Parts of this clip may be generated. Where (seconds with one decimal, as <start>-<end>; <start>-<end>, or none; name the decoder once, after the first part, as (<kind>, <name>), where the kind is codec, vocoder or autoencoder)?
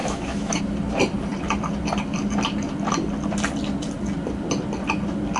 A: 0.0-0.6 (autoencoder, DAC-VAE)